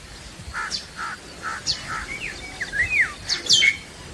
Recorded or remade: recorded